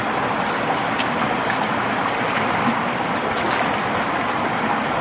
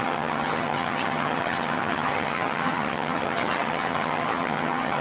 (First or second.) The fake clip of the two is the second